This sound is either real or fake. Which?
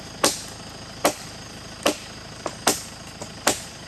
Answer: real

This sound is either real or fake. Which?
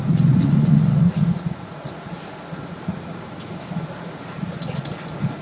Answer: fake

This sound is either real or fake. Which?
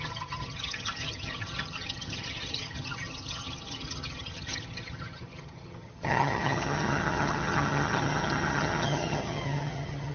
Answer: fake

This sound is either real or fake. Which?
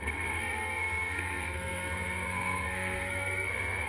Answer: fake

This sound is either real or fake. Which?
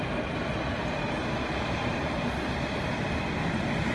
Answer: real